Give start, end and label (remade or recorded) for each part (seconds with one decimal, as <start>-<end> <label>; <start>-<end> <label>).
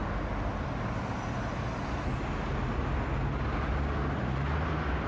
0.0-5.1 recorded